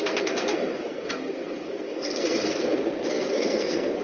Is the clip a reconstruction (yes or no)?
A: yes